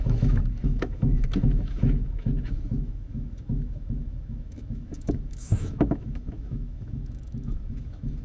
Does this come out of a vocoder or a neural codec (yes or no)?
yes